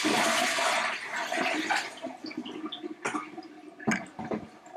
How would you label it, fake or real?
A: real